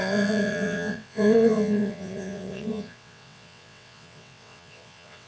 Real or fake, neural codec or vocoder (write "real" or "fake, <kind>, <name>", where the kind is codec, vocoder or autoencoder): fake, vocoder, WaveNeXt